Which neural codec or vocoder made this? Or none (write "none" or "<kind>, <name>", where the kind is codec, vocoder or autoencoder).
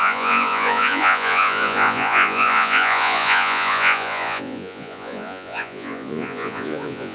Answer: vocoder, Vocos